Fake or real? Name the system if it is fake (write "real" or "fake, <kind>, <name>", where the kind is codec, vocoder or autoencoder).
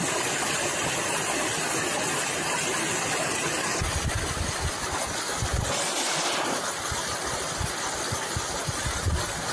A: real